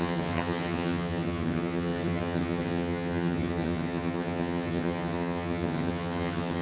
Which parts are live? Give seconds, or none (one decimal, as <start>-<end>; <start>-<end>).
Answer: none